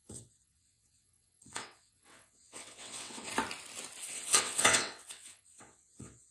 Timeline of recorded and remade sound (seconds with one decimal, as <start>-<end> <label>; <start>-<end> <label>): 0.0-3.3 remade; 3.3-4.0 recorded; 4.0-6.3 remade